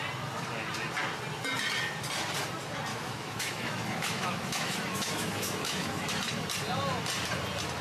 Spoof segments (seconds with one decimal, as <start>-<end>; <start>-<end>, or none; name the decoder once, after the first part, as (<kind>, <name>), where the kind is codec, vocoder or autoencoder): 2.9-6.1 (autoencoder, DAC-VAE)